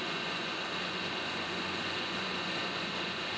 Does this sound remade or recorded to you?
remade